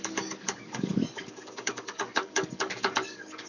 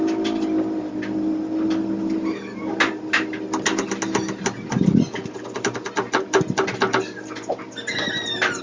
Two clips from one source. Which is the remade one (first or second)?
first